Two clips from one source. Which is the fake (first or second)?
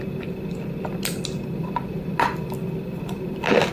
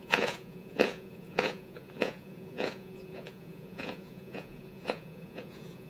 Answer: second